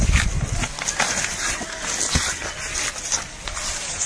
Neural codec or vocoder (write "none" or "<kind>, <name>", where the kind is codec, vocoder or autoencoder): none